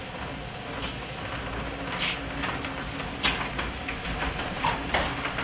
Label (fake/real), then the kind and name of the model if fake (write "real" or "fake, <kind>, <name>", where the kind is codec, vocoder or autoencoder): real